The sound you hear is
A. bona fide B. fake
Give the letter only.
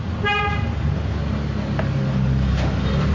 A